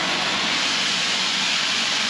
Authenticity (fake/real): fake